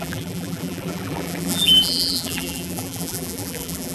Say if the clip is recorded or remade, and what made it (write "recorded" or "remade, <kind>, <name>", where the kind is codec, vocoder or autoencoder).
remade, vocoder, BigVGAN v2